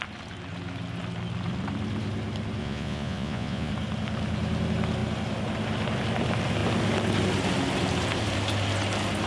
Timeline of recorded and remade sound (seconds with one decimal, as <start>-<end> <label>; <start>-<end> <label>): 0.0-2.6 recorded; 2.6-3.7 remade; 3.7-9.3 recorded